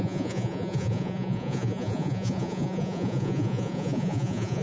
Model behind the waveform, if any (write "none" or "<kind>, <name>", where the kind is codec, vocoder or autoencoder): vocoder, Vocos